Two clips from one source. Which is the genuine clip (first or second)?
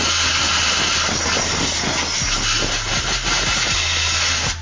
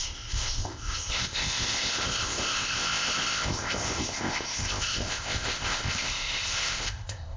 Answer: first